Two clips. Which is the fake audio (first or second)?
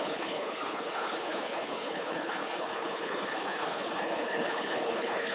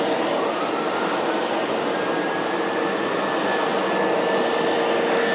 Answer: first